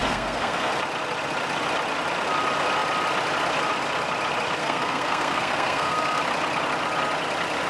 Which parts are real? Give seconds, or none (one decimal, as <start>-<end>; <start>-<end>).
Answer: 0.7-4.6; 6.2-7.7